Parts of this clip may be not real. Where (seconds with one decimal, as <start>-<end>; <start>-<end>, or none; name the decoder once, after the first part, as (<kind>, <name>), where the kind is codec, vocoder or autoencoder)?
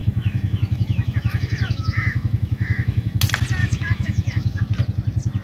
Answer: 0.0-3.2 (autoencoder, DAC-VAE); 3.6-4.6